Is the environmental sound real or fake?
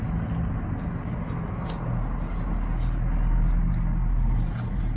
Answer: real